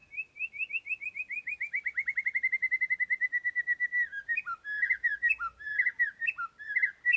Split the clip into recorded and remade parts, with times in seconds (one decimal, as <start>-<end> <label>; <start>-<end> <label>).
0.0-7.2 recorded